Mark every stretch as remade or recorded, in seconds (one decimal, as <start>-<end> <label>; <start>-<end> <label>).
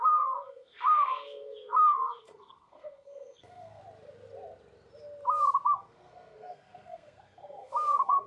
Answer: 0.0-3.8 remade; 3.8-5.7 recorded; 5.7-8.3 remade